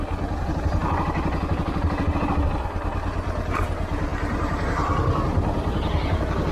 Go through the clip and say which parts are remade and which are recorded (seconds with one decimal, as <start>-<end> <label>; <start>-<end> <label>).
0.0-6.5 recorded